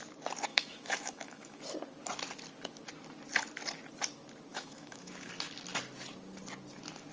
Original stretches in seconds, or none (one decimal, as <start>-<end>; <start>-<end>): 0.0-0.5; 1.6-4.5; 5.3-7.1